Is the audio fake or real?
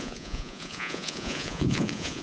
fake